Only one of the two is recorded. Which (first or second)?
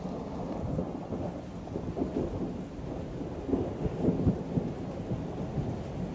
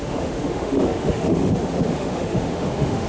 first